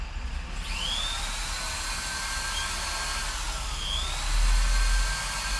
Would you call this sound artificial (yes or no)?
no